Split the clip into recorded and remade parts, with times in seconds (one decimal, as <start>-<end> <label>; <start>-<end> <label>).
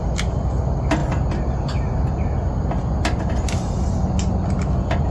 0.0-5.1 recorded